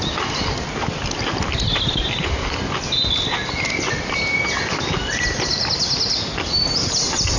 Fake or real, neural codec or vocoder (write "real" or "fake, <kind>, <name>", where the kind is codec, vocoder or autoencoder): real